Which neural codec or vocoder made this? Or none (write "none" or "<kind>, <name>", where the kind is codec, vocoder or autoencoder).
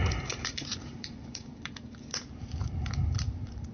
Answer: vocoder, BigVGAN v2